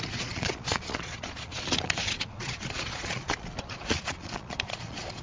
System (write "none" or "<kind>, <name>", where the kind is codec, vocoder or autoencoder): vocoder, Vocos